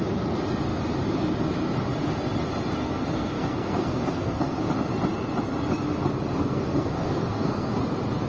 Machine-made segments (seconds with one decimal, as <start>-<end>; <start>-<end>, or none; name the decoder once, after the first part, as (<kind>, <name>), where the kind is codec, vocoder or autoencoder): 2.8-4.6 (codec, SNAC); 6.4-7.8